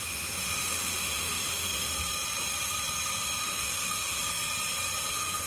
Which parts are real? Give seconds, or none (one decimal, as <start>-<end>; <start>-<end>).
1.9-3.4; 4.2-5.1